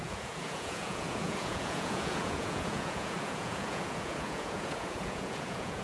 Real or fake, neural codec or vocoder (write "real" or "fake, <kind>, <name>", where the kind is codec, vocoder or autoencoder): fake, vocoder, Vocos